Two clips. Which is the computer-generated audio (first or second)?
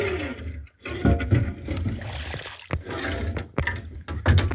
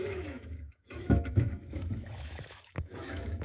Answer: second